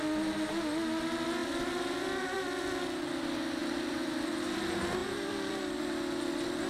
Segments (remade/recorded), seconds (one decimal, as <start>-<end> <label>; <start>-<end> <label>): 0.0-1.4 recorded; 1.4-2.6 remade; 2.6-3.6 recorded; 3.6-4.6 remade; 4.6-5.0 recorded; 5.0-5.6 remade; 5.6-6.7 recorded